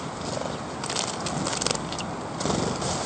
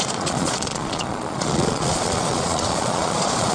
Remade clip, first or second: second